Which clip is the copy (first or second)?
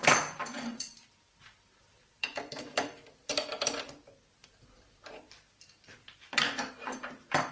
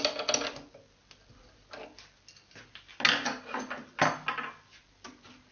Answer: first